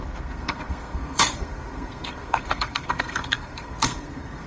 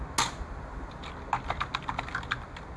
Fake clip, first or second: first